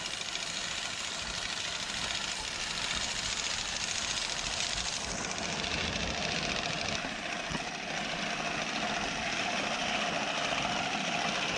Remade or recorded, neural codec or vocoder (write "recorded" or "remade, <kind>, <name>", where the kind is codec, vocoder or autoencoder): recorded